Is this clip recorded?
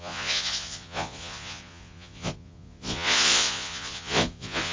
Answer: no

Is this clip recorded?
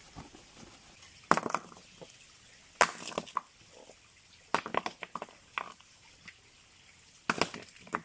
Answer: yes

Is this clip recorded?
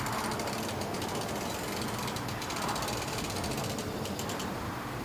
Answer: yes